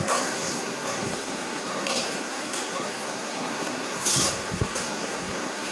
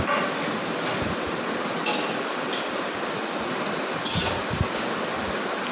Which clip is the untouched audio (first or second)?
second